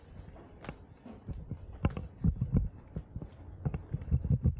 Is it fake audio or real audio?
fake